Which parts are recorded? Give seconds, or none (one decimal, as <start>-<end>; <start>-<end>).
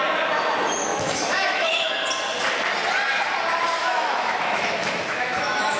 0.0-0.9; 1.9-3.8